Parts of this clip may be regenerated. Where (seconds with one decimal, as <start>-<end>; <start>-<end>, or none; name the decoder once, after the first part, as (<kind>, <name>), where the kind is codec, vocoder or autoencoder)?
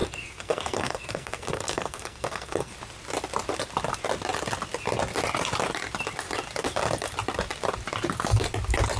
0.0-2.7 (codec, SNAC)